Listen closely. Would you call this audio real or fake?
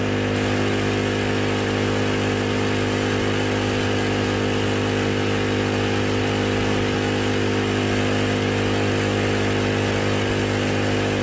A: real